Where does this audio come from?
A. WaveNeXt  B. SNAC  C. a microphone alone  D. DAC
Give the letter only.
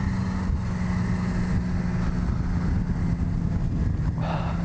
C